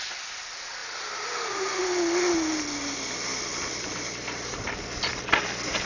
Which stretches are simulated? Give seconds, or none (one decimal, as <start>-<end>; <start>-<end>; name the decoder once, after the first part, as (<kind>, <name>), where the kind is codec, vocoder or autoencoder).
none